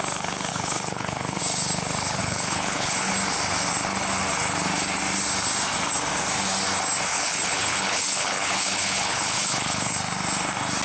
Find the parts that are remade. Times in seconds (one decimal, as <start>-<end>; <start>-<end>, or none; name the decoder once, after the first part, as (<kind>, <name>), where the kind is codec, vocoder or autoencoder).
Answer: 0.5-1.4 (codec, HILCodec); 2.2-3.1; 7.1-9.9